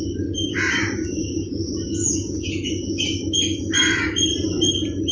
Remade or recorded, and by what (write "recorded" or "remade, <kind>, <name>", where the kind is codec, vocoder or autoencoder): recorded